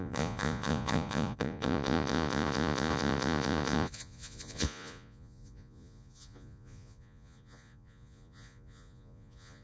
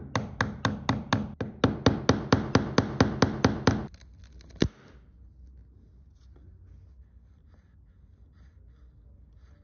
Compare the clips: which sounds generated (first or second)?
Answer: first